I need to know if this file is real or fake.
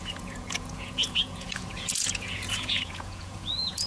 fake